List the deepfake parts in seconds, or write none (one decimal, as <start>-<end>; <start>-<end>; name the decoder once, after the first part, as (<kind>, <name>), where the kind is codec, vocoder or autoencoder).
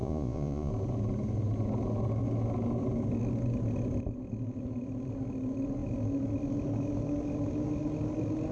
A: 0.0-0.7 (vocoder, Vocos)